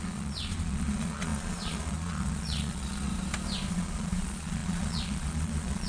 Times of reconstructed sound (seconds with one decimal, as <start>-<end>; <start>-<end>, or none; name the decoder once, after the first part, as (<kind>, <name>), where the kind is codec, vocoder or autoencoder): 0.0-3.1 (vocoder, Vocos); 3.7-5.9